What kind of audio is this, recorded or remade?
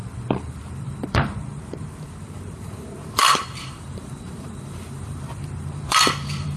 remade